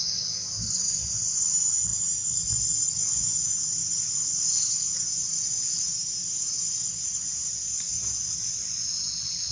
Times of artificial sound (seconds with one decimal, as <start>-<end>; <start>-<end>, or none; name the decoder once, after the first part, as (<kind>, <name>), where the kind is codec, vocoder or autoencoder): 3.8-4.4 (vocoder, BigVGAN v2); 6.9-8.2